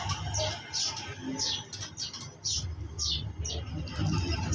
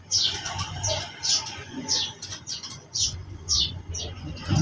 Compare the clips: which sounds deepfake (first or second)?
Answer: second